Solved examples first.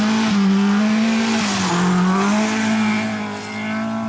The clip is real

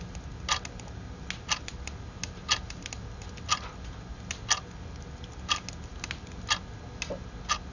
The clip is real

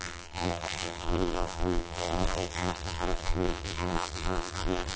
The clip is fake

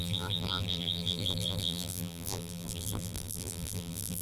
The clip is fake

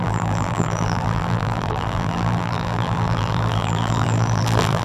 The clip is fake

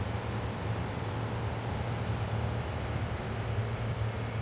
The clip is real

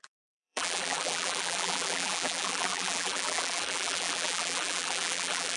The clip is fake